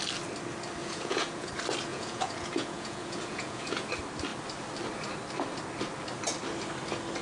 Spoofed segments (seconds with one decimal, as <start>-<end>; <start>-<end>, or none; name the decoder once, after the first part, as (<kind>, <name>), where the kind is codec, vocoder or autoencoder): 0.8-1.5 (vocoder, Vocos); 1.9-3.9